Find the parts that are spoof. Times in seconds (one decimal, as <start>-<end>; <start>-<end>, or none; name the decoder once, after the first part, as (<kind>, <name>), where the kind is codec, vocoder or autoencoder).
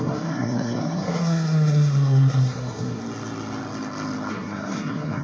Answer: 0.0-3.0 (codec, SNAC); 4.3-5.2